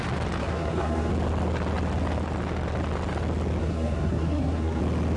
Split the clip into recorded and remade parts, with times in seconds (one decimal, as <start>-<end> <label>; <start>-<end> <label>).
0.0-0.4 recorded; 0.4-1.1 remade; 1.1-3.6 recorded; 3.6-4.8 remade; 4.8-5.2 recorded